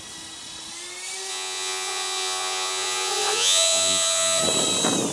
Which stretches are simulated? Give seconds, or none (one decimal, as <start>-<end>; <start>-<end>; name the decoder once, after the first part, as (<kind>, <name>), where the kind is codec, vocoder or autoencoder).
1.3-4.4 (vocoder, Vocos)